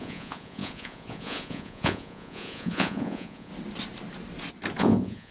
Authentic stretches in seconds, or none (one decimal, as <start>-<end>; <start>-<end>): 3.5-4.8